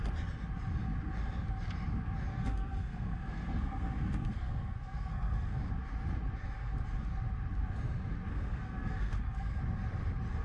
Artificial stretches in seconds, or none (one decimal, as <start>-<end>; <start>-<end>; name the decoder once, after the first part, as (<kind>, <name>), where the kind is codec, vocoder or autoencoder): 2.3-5.7 (codec, SNAC); 8.3-9.6